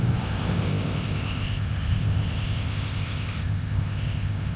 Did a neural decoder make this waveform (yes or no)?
yes